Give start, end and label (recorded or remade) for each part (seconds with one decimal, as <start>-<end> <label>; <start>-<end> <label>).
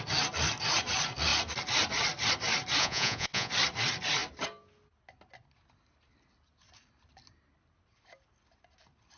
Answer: 0.0-2.8 recorded; 2.8-3.5 remade; 3.5-9.2 recorded